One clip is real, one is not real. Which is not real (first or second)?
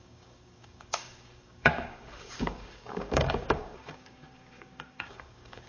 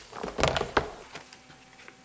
first